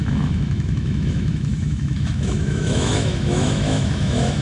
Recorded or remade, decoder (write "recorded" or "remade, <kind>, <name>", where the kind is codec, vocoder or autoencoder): remade, autoencoder, DAC-VAE